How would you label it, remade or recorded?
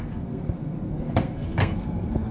remade